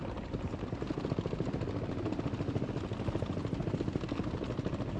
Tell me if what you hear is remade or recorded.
recorded